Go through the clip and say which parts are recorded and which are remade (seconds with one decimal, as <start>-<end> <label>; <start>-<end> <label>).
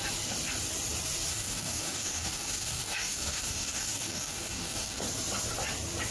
0.0-1.3 recorded; 1.3-5.0 remade; 5.0-6.1 recorded